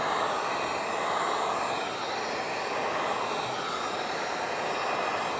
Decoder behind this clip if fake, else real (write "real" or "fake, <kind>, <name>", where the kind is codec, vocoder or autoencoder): real